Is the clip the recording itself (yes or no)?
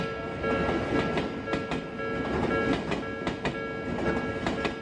yes